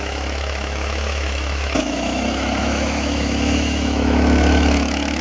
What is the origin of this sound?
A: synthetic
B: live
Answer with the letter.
A